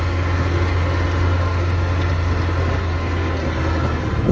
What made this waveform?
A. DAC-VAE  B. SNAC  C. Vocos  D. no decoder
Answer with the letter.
D